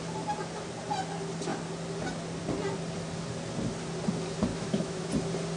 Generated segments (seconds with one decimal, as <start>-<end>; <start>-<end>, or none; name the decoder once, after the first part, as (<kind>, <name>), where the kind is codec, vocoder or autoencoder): 4.5-5.1 (autoencoder, DAC-VAE)